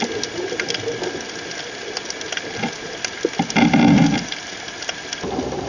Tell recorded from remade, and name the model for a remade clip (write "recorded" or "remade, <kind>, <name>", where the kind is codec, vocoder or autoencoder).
recorded